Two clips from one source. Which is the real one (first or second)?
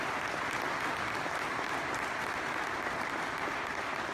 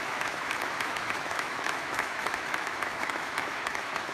first